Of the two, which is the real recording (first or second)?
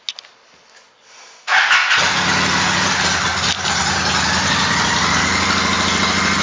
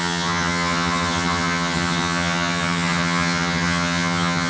first